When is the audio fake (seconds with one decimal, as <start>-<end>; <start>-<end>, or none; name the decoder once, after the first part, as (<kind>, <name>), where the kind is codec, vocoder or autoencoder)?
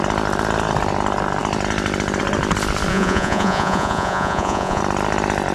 2.9-4.8 (vocoder, Vocos)